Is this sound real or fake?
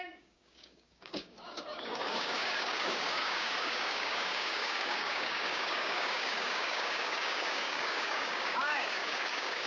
fake